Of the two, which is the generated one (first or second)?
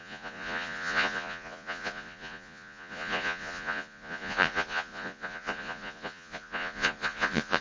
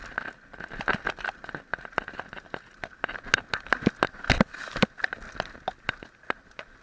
first